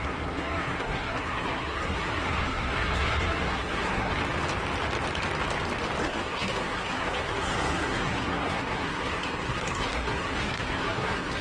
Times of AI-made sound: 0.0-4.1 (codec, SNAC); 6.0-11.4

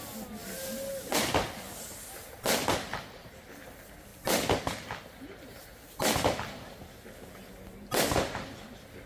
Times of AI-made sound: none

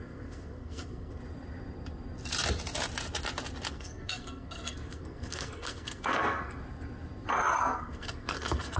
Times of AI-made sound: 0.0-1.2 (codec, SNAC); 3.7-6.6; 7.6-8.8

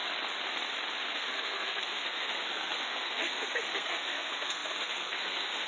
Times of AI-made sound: 1.1-5.7 (codec, SNAC)

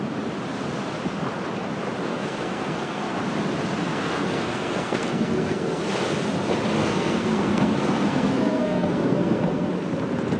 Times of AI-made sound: 2.1-3.2 (codec, SNAC); 3.8-5.8; 6.8-9.7